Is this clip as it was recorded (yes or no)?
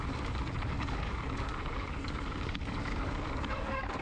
no